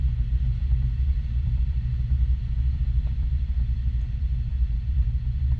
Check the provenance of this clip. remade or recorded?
remade